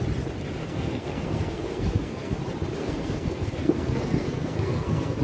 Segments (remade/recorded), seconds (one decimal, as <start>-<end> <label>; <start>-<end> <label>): 0.0-0.6 recorded; 0.6-2.4 remade; 2.4-2.8 recorded; 2.8-5.2 remade